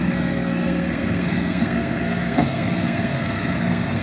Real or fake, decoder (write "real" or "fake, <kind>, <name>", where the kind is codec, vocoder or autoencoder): fake, codec, SNAC